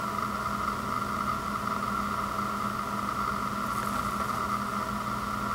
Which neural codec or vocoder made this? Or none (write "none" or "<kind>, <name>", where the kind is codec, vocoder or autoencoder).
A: none